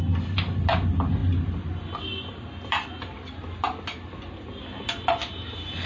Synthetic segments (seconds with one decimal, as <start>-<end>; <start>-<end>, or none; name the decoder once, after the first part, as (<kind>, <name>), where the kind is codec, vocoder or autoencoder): none

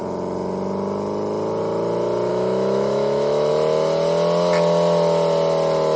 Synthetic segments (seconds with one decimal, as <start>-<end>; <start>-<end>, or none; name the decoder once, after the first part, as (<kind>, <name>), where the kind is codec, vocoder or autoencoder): 2.3-3.5 (autoencoder, DAC-VAE)

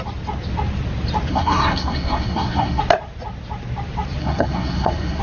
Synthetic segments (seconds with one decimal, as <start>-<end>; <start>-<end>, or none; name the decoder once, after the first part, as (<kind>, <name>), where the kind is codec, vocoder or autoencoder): 1.3-2.8 (codec, SNAC); 4.2-5.2

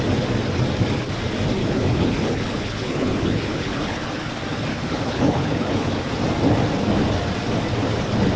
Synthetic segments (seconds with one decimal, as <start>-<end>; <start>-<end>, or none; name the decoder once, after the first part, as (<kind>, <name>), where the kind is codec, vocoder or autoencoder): 1.6-4.3 (codec, HILCodec); 4.7-6.0

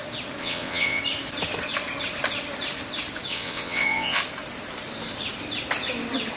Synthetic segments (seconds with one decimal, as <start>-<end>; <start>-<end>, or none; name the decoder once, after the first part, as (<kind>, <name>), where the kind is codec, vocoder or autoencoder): 0.4-1.0 (vocoder, WaveNeXt); 3.3-4.2

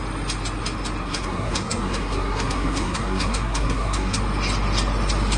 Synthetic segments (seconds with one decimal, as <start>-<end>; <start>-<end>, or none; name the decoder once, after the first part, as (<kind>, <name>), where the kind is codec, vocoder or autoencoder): 1.0-4.2 (codec, SNAC)

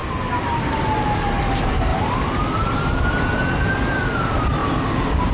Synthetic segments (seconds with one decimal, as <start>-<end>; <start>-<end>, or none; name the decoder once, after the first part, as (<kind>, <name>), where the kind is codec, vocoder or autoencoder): none